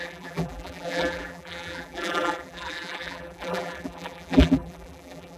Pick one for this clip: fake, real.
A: fake